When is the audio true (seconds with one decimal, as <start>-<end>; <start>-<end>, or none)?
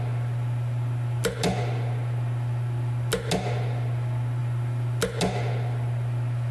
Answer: 0.0-6.5